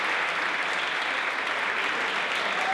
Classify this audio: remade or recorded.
recorded